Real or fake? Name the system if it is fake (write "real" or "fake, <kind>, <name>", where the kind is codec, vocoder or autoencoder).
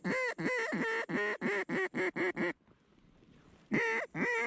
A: real